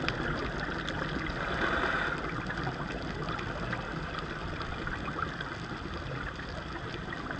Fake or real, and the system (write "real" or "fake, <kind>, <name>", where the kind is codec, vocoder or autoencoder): real